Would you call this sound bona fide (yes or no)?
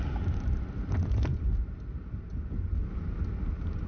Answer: yes